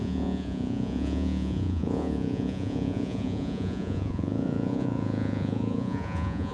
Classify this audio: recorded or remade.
remade